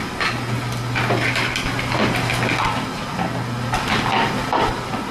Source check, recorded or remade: recorded